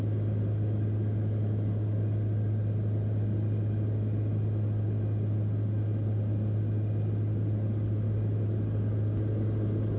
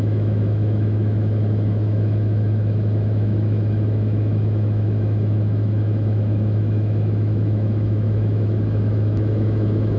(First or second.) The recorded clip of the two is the first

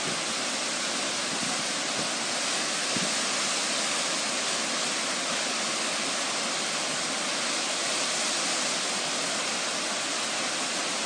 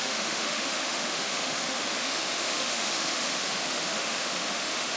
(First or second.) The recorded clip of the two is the first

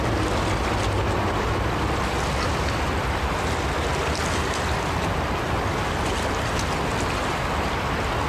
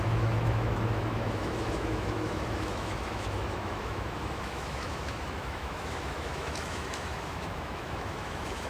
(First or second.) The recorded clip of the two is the first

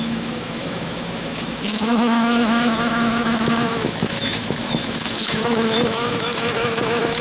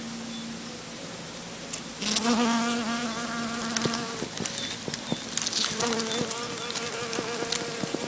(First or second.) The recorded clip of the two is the second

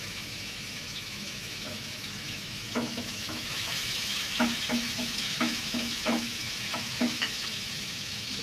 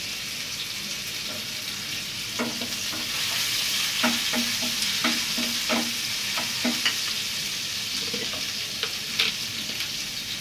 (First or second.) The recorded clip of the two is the second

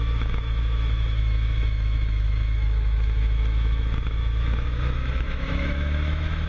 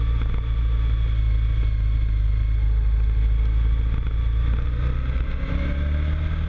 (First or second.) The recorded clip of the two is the second